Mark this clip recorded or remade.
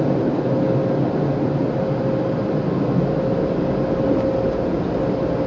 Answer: recorded